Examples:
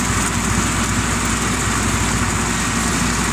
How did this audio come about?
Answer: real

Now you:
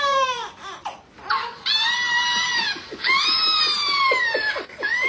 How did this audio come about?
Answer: fake